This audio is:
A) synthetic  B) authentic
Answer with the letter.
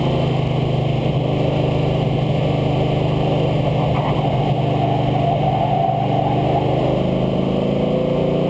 B